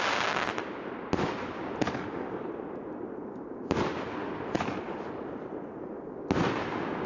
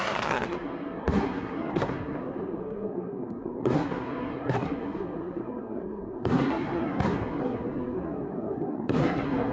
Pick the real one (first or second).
first